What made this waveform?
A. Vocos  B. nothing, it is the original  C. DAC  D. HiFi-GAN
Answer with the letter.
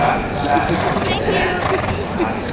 B